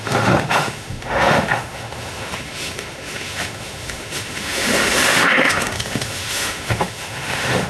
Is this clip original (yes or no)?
no